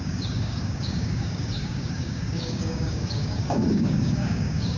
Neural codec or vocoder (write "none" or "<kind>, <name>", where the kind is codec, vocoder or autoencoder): codec, DAC